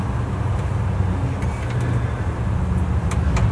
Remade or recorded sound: recorded